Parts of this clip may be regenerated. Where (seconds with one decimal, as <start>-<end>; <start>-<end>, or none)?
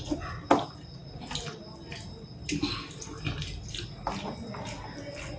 none